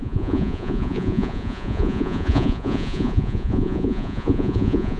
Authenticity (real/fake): fake